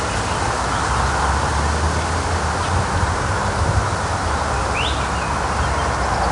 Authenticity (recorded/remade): recorded